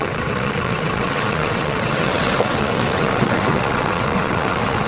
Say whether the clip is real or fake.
fake